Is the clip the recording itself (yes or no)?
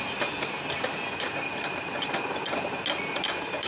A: yes